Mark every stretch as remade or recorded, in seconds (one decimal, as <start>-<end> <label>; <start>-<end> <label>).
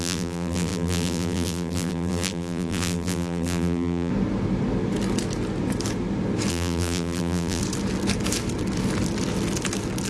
0.0-4.1 remade; 4.1-6.5 recorded; 6.5-7.6 remade; 7.6-10.1 recorded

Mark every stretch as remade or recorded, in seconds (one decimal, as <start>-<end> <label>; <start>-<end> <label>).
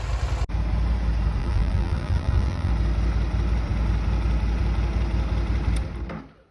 0.0-1.4 recorded; 1.4-2.7 remade; 2.7-6.5 recorded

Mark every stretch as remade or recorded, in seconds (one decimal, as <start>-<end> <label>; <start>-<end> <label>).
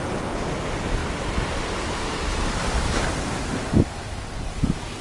0.0-5.0 recorded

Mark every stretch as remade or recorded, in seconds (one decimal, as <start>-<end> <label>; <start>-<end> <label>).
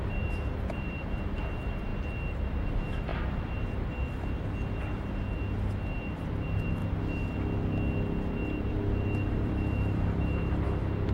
0.0-1.9 remade; 1.9-2.7 recorded; 2.7-3.1 remade; 3.1-5.1 recorded; 5.1-6.8 remade; 6.8-8.7 recorded; 8.7-11.1 remade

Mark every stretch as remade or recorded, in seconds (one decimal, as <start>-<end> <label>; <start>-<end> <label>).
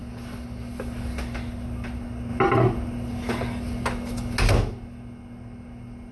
0.0-6.1 recorded